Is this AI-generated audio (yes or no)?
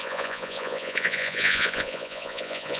yes